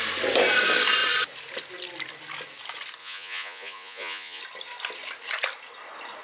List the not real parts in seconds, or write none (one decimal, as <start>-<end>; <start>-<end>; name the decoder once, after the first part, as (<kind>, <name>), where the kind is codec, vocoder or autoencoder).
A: 3.0-4.4 (vocoder, Vocos)